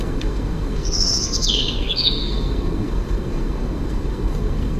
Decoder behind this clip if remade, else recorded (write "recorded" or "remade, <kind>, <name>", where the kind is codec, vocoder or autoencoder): remade, codec, SNAC